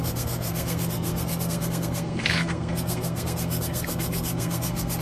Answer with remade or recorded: remade